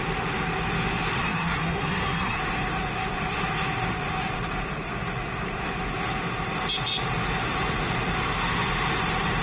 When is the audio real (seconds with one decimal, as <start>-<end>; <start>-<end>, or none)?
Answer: 0.0-1.2; 2.4-9.4